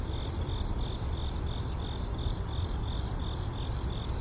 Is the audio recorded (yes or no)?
no